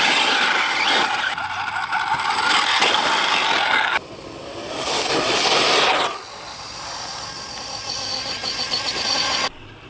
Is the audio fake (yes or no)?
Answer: no